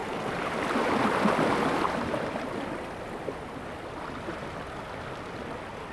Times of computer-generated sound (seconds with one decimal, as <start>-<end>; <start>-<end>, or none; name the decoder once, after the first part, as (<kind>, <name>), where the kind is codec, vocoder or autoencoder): none